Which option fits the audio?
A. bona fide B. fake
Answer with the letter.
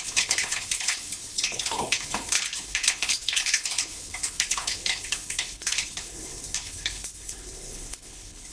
B